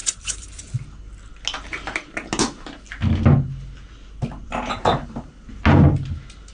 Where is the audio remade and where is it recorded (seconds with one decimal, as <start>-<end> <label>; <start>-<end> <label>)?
0.0-0.6 remade; 0.6-4.4 recorded; 4.4-5.3 remade; 5.3-6.5 recorded